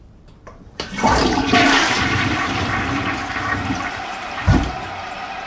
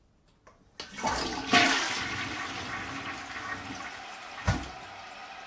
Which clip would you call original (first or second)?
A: second